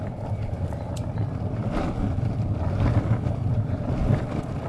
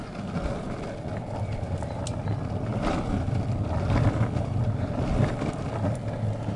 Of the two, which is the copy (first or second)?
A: first